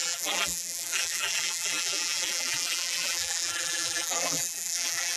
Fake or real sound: fake